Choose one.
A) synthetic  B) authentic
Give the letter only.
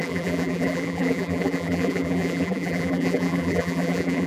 A